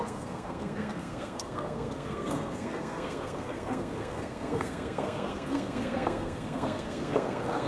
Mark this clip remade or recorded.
remade